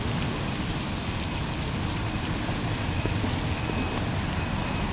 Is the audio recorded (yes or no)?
yes